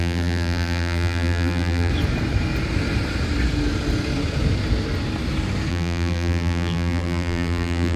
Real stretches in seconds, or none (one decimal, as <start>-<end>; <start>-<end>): 1.9-5.7